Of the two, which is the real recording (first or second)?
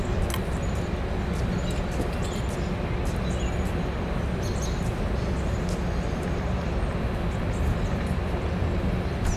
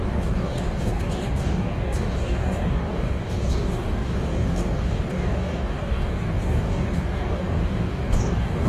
first